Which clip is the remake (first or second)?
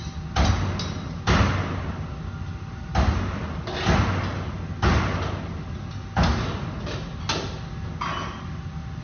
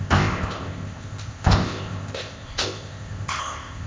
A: second